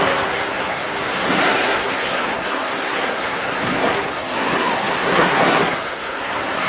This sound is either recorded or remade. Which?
remade